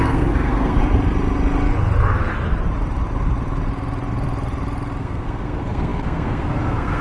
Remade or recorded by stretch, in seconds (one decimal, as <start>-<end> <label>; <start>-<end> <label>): 0.0-0.8 remade; 0.8-5.0 recorded; 5.0-7.0 remade